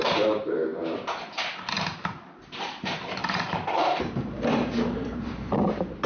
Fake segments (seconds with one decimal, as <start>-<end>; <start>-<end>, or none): 0.0-0.7; 1.7-6.1